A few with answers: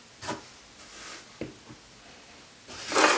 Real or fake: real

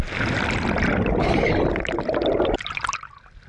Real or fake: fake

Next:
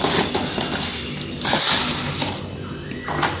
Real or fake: real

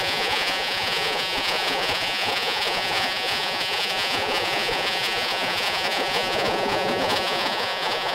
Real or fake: fake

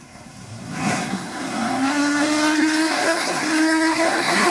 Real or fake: fake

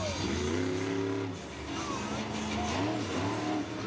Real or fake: real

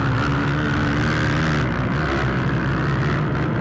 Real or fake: real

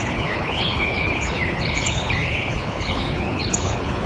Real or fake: fake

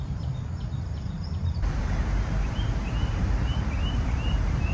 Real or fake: fake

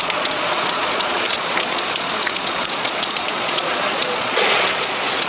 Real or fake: fake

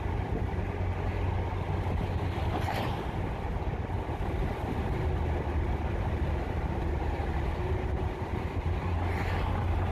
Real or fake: real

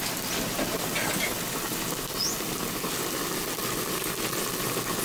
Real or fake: real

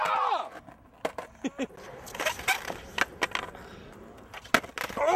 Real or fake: real